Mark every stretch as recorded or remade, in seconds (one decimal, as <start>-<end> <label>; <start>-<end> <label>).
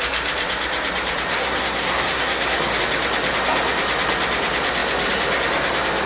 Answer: 0.0-1.3 recorded; 1.3-2.8 remade; 2.8-6.1 recorded